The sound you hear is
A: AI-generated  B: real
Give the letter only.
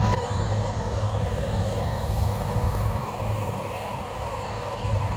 A